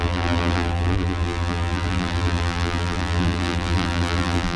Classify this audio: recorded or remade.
remade